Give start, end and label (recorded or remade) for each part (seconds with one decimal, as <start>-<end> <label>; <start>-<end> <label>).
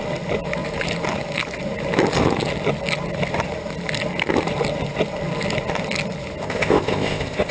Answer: 0.0-6.4 recorded; 6.4-7.5 remade